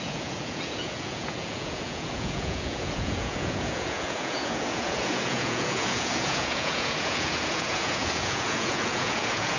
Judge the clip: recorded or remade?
remade